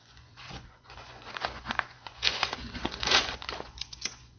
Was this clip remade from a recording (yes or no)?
yes